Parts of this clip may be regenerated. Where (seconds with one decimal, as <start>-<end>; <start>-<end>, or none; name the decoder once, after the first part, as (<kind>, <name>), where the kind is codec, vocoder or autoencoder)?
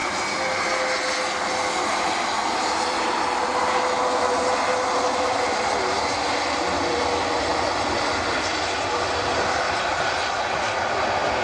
none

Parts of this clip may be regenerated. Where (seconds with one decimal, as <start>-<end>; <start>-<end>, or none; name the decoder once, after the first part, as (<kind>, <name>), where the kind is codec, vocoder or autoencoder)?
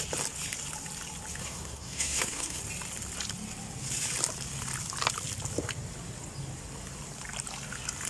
1.4-2.6 (codec, SNAC)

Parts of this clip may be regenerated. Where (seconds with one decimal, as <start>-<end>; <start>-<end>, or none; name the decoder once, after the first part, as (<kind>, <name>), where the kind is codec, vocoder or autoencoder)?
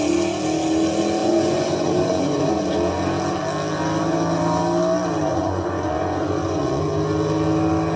1.2-2.5 (vocoder, Vocos); 5.3-6.8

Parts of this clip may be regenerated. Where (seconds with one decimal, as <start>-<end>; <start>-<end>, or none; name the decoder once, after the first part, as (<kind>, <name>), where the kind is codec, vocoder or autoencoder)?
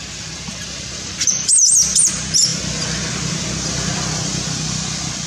none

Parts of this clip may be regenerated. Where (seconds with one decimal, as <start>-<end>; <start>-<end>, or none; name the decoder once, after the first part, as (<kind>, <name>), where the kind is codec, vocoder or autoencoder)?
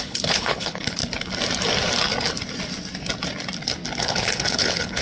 0.0-1.0 (codec, HILCodec); 4.0-5.0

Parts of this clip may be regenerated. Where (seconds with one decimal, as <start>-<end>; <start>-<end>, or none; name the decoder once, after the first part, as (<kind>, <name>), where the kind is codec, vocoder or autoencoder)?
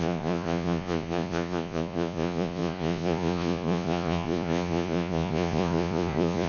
0.0-6.5 (vocoder, Vocos)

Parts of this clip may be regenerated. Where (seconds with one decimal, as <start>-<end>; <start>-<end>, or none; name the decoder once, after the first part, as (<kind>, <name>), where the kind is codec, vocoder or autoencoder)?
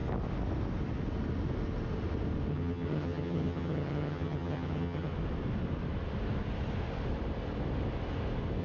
2.5-5.1 (vocoder, HiFi-GAN)